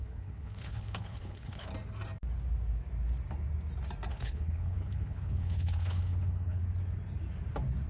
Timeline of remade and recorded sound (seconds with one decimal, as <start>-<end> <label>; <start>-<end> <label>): 0.0-1.7 remade; 1.7-4.1 recorded; 4.1-6.6 remade; 6.6-7.9 recorded